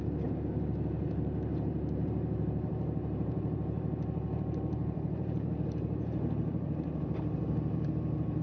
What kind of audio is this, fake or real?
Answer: fake